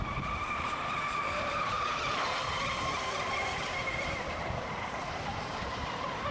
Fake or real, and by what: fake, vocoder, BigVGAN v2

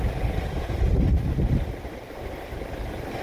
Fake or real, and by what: fake, vocoder, BigVGAN v2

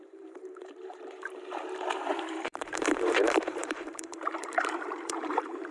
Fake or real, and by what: fake, vocoder, BigVGAN v2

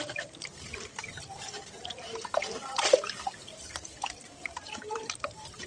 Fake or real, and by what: fake, vocoder, BigVGAN v2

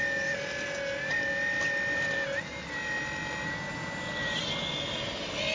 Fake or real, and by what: real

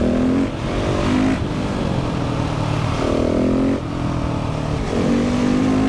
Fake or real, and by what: real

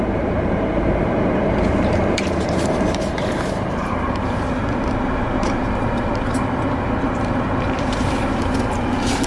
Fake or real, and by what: fake, vocoder, BigVGAN v2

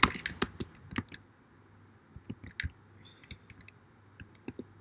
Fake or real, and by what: real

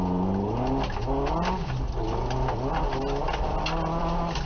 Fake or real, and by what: real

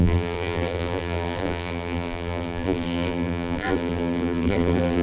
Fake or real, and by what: fake, vocoder, BigVGAN v2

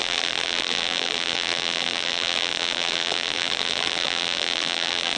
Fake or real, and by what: fake, vocoder, BigVGAN v2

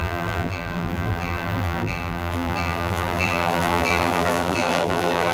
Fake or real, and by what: fake, vocoder, BigVGAN v2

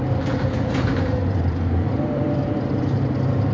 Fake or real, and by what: fake, vocoder, BigVGAN v2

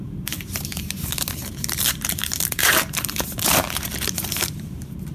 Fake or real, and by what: fake, vocoder, BigVGAN v2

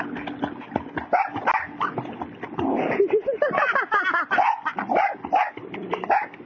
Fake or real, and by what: real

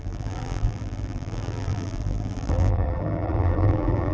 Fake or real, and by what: fake, vocoder, BigVGAN v2